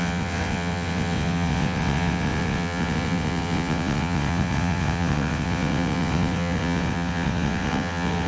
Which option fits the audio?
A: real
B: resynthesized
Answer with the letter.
B